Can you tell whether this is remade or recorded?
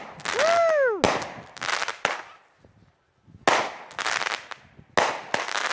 recorded